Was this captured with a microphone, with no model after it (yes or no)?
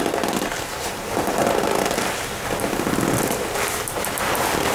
yes